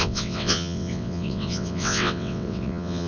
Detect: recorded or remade remade